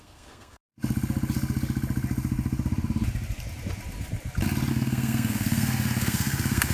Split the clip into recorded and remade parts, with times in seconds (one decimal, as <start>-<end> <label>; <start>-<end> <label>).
0.0-0.7 remade; 0.7-4.7 recorded; 4.7-6.7 remade